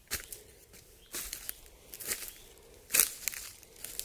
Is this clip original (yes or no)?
yes